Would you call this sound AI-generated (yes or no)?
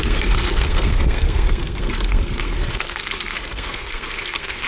yes